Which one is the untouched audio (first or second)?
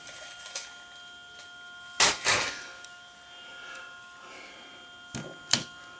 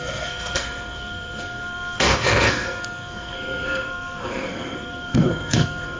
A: first